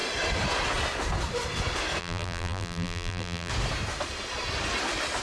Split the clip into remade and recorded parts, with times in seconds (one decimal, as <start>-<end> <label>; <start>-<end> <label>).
0.0-2.0 recorded; 2.0-3.5 remade; 3.5-5.2 recorded

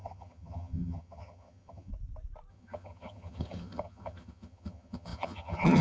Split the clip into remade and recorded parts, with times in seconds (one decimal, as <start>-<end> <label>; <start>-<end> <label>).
0.0-1.9 remade; 1.9-2.5 recorded; 2.5-5.8 remade

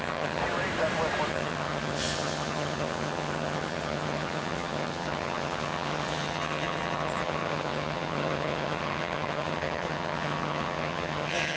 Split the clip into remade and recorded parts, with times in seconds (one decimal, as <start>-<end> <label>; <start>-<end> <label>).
0.0-0.4 remade; 0.4-1.3 recorded; 1.3-11.6 remade

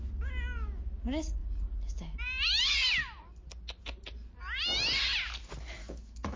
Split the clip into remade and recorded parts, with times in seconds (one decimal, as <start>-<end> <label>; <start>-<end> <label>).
0.0-5.8 recorded; 5.8-6.4 remade

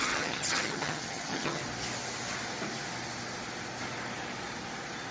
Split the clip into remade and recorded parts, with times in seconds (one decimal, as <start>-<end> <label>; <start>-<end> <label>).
0.0-1.6 remade; 1.6-5.1 recorded

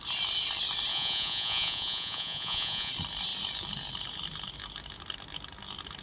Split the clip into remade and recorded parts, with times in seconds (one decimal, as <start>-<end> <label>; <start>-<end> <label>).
0.0-0.9 recorded; 0.9-2.9 remade; 2.9-6.0 recorded

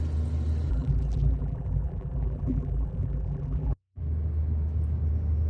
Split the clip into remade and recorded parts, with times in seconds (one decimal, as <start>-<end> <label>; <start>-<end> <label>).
0.0-0.7 recorded; 0.7-4.0 remade; 4.0-5.5 recorded

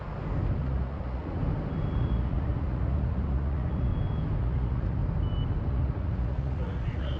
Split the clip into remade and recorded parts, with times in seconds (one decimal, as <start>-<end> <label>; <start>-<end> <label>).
0.0-0.6 recorded; 0.6-1.4 remade; 1.4-2.0 recorded; 2.0-3.9 remade; 3.9-4.4 recorded; 4.4-5.0 remade; 5.0-5.7 recorded; 5.7-7.2 remade